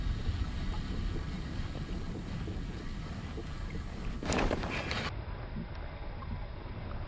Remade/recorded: recorded